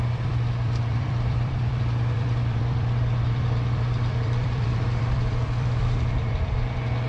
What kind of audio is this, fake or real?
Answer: fake